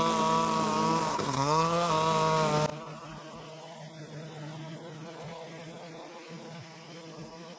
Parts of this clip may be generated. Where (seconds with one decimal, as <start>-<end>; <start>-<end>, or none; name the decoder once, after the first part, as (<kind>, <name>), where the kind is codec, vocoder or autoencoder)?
1.1-1.9 (codec, SNAC)